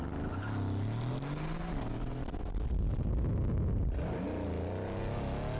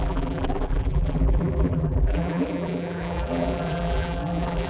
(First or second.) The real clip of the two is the first